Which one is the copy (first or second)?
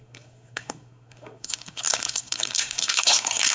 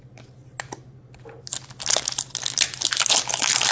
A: first